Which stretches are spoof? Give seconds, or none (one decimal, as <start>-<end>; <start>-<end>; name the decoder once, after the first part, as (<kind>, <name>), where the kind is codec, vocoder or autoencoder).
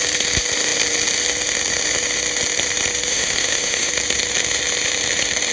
3.1-3.9 (autoencoder, DAC-VAE)